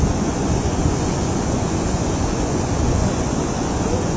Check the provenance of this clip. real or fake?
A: fake